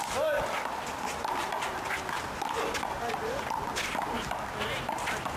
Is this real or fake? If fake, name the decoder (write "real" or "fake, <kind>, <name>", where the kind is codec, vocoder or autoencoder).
real